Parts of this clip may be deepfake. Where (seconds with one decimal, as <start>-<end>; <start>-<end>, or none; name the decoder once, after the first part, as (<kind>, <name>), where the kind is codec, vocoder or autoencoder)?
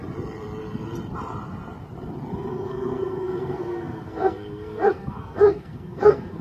2.5-6.4 (codec, SNAC)